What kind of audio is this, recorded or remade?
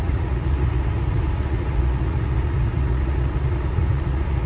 remade